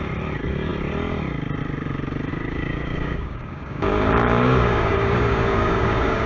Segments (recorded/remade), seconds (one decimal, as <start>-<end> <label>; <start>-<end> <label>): 0.0-2.3 recorded; 2.3-6.3 remade